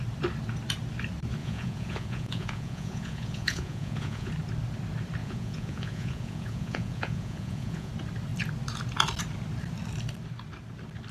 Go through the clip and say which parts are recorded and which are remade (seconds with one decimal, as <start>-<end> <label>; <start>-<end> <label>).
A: 0.0-1.4 recorded; 1.4-4.3 remade; 4.3-5.2 recorded; 5.2-7.9 remade; 7.9-11.1 recorded